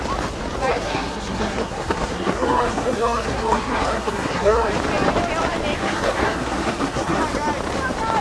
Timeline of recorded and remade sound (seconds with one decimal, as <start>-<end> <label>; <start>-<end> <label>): 0.0-0.7 recorded; 0.7-4.7 remade; 4.7-5.8 recorded; 5.8-7.2 remade; 7.2-8.2 recorded